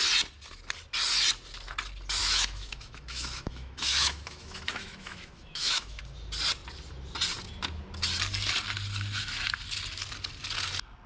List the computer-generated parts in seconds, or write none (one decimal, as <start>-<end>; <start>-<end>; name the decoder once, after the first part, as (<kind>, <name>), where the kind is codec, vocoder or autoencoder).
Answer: 2.2-6.0 (autoencoder, DAC-VAE)